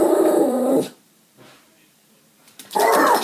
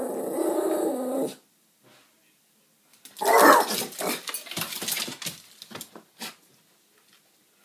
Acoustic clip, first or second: second